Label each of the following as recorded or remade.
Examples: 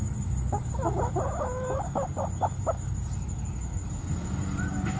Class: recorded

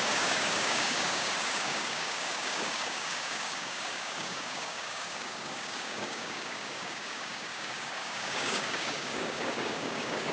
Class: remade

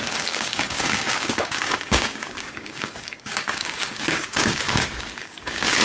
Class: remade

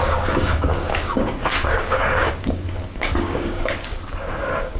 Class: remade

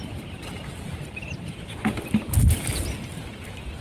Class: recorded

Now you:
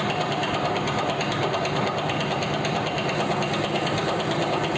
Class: recorded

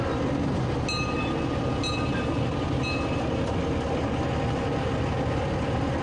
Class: recorded